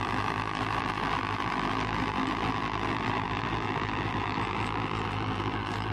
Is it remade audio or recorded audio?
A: remade